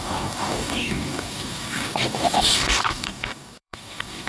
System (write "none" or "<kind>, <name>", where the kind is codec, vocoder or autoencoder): codec, DAC